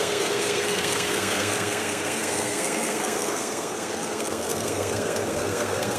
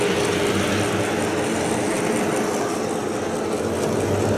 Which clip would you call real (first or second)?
second